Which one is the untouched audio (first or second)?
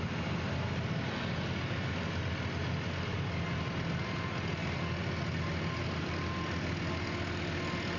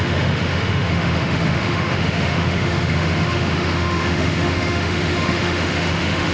first